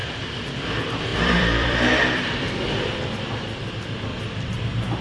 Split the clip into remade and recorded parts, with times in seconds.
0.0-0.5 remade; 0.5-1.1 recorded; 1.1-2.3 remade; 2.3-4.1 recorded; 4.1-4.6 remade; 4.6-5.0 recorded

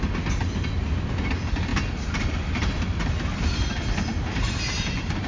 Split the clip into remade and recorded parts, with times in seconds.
0.0-4.3 recorded; 4.3-5.3 remade

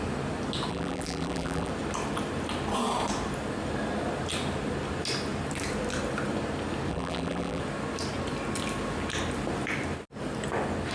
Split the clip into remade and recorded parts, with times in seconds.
0.0-0.7 recorded; 0.7-1.7 remade; 1.7-6.9 recorded; 6.9-7.6 remade; 7.6-10.9 recorded

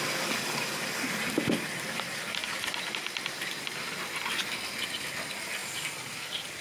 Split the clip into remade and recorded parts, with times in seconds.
0.0-2.4 recorded; 2.4-3.2 remade; 3.2-5.6 recorded; 5.6-6.6 remade

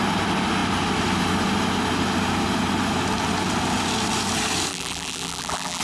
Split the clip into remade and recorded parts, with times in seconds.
0.0-4.7 recorded; 4.7-5.8 remade

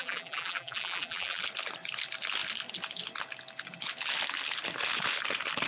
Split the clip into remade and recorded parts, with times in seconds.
0.0-1.4 remade; 1.4-5.7 recorded

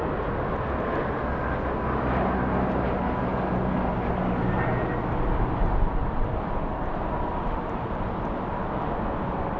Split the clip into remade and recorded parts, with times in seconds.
0.0-6.0 recorded; 6.0-8.2 remade; 8.2-9.6 recorded

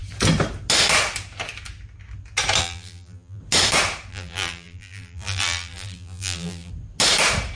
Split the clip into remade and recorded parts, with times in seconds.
0.0-2.6 recorded; 2.6-3.4 remade; 3.4-4.1 recorded; 4.1-6.7 remade; 6.7-7.6 recorded